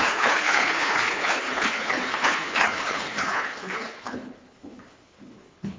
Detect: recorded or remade remade